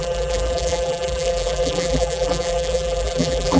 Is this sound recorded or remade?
remade